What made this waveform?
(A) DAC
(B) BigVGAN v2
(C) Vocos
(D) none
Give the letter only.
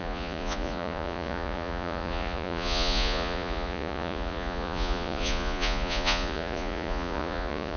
C